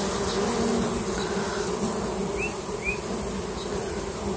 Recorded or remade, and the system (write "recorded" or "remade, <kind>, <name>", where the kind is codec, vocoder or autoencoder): recorded